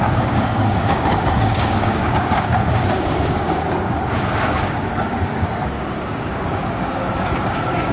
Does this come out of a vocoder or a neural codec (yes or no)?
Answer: yes